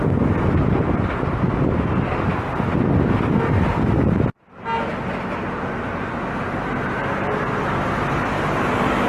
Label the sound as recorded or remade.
recorded